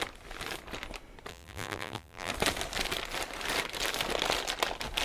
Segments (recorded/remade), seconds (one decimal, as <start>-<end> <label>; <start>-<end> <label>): 0.0-1.3 recorded; 1.3-2.3 remade; 2.3-5.0 recorded